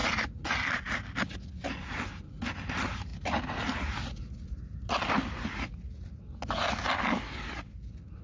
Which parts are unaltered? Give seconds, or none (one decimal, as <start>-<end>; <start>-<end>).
0.5-8.2